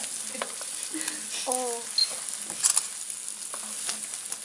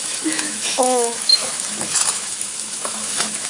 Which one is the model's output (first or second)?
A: second